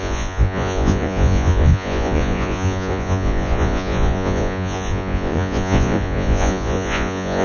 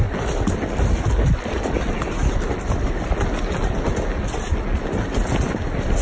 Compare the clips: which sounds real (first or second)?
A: second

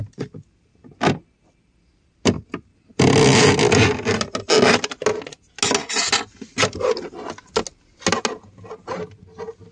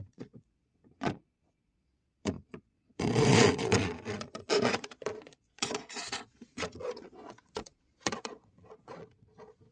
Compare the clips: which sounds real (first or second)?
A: first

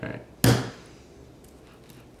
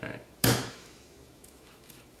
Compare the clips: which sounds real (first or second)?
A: first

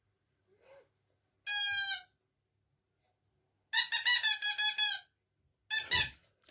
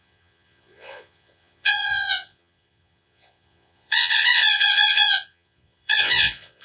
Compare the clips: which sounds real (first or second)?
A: first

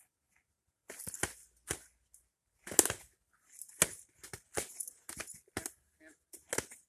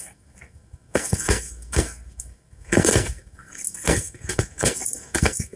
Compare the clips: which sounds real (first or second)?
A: first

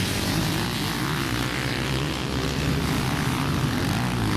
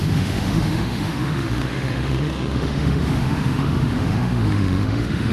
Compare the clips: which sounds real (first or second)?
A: first